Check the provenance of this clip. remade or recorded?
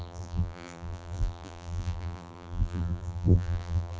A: remade